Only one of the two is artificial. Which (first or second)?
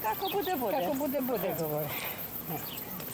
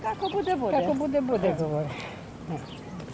first